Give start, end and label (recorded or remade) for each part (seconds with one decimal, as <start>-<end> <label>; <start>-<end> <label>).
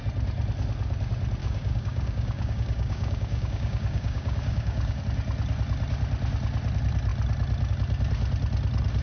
0.0-1.4 recorded; 1.4-5.0 remade; 5.0-9.0 recorded